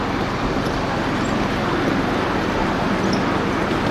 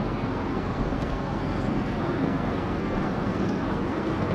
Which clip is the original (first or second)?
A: first